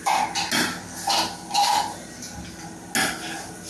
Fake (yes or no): no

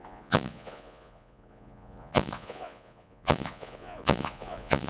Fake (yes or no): yes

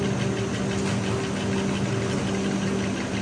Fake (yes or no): no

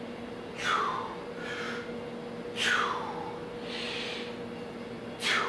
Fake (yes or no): no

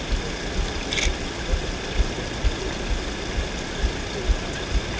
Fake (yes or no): no